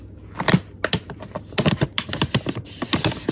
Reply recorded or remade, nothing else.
remade